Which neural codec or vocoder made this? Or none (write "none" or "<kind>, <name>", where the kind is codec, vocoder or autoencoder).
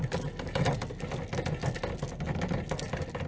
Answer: none